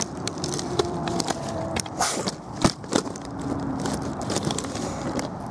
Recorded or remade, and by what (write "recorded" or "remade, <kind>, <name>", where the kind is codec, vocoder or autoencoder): remade, vocoder, BigVGAN v2